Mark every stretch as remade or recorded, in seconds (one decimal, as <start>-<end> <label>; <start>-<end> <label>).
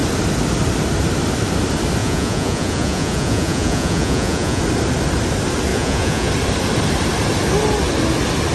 0.0-2.0 recorded; 2.0-4.6 remade; 4.6-5.7 recorded; 5.7-6.3 remade; 6.3-8.5 recorded